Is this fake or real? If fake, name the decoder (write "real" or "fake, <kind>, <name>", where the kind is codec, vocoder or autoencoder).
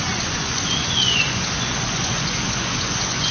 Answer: fake, vocoder, Vocos